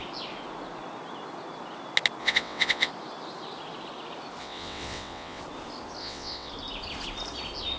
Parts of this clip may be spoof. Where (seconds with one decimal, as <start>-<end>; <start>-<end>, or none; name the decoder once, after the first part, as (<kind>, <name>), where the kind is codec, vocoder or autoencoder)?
2.2-2.9 (vocoder, WaveNeXt); 4.4-5.4; 6.0-6.5